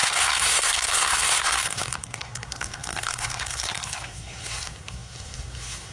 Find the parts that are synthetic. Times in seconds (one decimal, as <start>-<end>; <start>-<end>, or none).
0.0-5.9